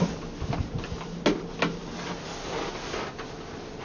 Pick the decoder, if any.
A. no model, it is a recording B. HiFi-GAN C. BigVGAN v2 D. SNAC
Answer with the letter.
A